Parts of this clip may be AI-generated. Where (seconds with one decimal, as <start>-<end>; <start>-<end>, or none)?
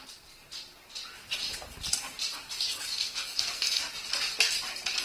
2.9-3.8